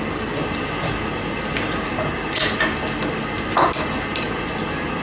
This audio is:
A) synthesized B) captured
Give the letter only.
B